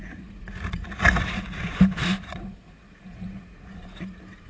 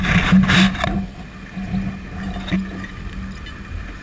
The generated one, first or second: first